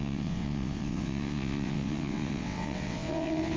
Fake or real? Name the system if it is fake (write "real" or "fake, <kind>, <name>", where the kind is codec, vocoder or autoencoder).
fake, vocoder, WaveNeXt